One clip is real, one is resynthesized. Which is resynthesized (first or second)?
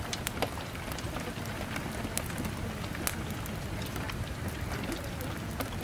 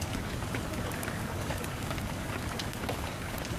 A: second